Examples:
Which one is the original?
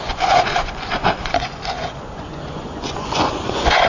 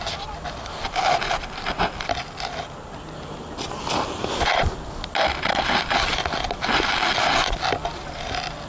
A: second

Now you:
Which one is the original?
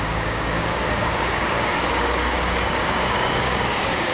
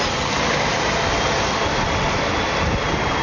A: second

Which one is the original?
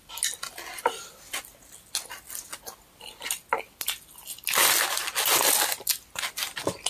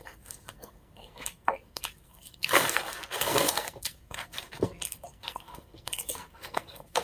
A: first